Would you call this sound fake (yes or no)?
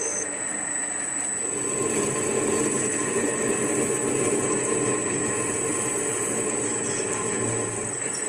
no